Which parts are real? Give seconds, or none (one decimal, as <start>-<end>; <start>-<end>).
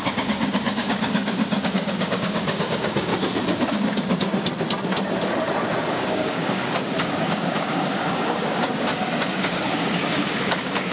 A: 3.1-5.9; 8.9-9.4